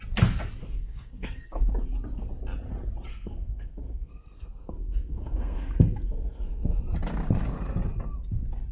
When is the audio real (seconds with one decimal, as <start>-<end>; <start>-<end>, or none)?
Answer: 0.0-0.6; 1.6-3.1; 6.8-8.7